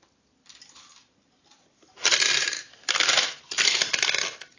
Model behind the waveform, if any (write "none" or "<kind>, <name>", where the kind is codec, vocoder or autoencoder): none